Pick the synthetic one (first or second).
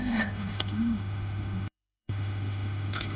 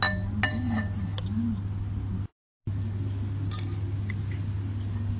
first